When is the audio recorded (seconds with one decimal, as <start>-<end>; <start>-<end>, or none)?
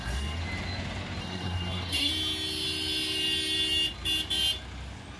0.4-1.2; 2.1-5.2